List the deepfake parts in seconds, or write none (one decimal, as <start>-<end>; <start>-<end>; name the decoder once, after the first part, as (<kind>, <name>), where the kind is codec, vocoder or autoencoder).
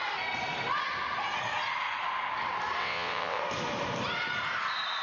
2.8-3.4 (vocoder, WaveNeXt)